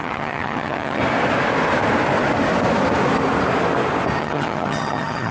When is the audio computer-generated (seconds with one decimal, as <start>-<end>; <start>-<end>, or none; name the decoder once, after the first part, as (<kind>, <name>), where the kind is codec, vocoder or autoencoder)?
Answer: 0.0-1.0 (vocoder, HiFi-GAN); 4.2-5.3